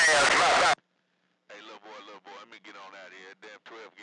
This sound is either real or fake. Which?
real